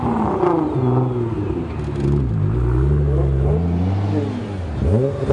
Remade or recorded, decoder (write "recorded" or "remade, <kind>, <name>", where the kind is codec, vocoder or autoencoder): recorded